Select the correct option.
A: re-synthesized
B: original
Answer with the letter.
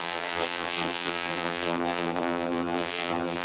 A